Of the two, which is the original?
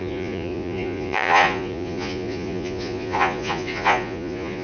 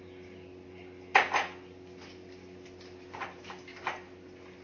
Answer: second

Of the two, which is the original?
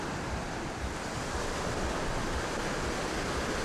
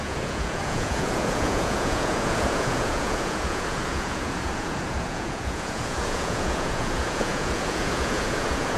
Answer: first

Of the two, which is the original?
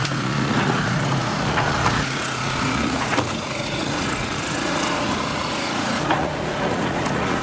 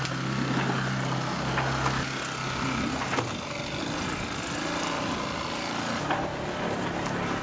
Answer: second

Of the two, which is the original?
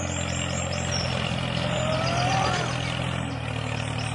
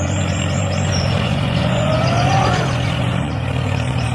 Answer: first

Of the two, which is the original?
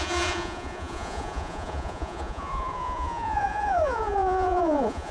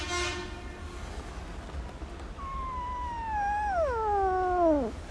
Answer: second